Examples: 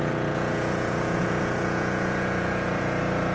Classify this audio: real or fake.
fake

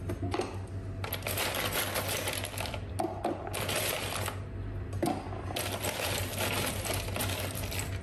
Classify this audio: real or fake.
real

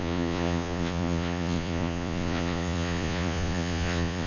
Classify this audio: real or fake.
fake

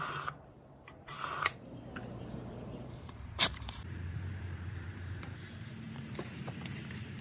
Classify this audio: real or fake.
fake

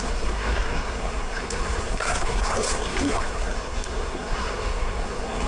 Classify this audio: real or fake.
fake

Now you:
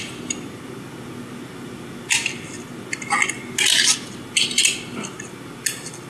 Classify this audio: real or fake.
real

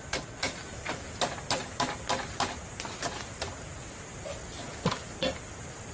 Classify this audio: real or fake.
real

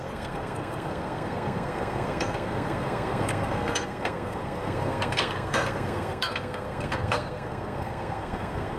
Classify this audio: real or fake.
fake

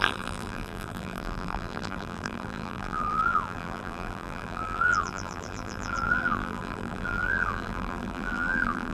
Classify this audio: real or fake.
fake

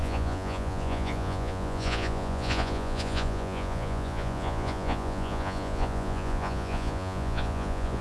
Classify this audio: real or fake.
fake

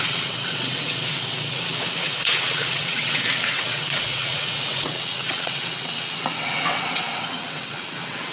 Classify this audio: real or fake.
fake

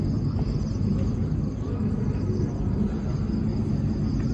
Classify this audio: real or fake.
real